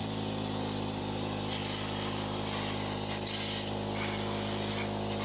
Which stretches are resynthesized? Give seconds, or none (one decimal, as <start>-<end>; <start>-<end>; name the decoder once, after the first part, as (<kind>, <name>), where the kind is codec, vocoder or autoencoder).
none